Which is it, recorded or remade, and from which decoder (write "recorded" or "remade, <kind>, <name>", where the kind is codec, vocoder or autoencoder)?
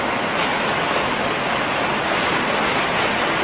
recorded